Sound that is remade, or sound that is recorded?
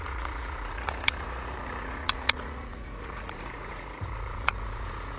remade